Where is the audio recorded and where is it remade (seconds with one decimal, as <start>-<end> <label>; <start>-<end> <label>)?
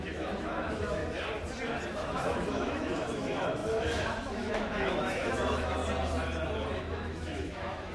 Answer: 0.0-1.0 remade; 1.0-1.9 recorded; 1.9-5.8 remade; 5.8-6.7 recorded; 6.7-7.9 remade